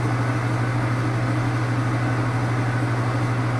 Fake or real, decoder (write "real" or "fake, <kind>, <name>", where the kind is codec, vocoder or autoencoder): real